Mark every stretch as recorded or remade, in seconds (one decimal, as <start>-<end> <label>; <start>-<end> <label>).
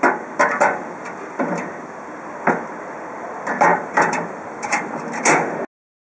0.0-3.7 recorded; 3.7-5.0 remade; 5.0-6.1 recorded